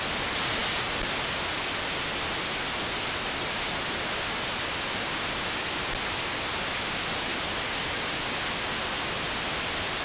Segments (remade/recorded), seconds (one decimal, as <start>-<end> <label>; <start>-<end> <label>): 0.0-10.0 recorded